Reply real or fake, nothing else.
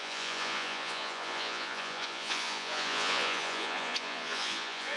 fake